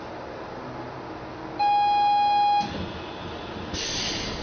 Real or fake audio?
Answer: real